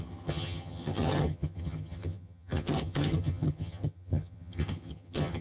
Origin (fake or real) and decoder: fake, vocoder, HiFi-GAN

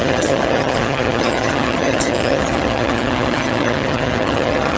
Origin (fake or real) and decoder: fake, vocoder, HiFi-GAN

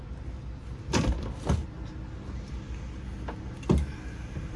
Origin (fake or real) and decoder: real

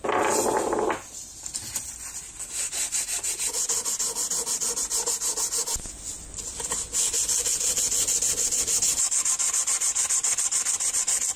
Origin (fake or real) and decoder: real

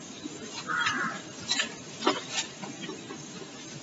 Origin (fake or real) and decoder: real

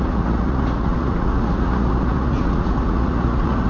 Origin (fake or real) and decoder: fake, vocoder, Vocos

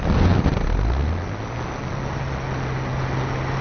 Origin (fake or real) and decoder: real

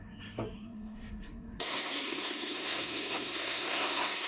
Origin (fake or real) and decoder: fake, codec, SNAC